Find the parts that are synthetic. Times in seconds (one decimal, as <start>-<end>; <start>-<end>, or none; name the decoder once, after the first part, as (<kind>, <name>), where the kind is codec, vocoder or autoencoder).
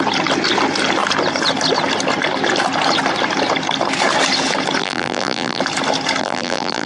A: 4.8-5.6 (vocoder, BigVGAN v2); 6.2-6.9